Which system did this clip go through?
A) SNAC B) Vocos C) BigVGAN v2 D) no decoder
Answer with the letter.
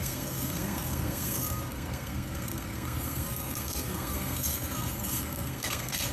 A